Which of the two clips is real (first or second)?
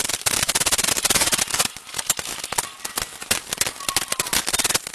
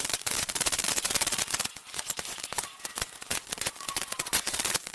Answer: first